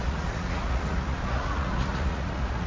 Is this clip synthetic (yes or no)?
yes